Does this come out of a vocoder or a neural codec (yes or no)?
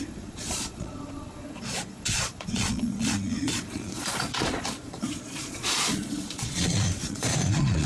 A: yes